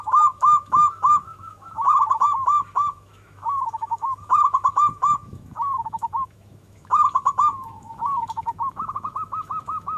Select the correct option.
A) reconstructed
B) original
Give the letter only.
A